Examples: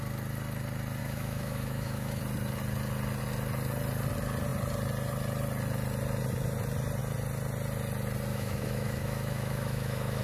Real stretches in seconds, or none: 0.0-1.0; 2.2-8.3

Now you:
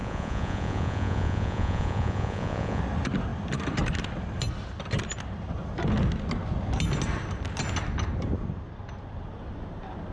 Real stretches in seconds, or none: 2.8-10.1

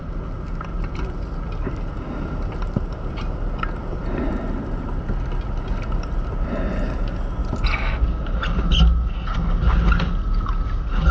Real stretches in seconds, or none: 0.0-0.7; 1.3-3.8; 4.3-11.1

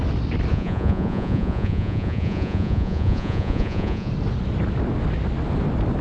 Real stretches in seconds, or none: 0.0-0.5; 4.1-6.0